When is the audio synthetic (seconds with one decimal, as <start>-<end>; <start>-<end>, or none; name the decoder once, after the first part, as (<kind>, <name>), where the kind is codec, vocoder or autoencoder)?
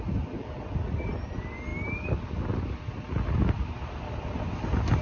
none